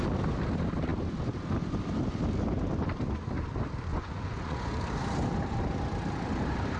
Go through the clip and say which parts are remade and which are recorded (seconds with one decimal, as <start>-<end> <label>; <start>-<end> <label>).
0.0-3.9 recorded; 3.9-4.8 remade; 4.8-6.8 recorded